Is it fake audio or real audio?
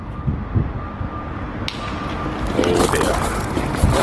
real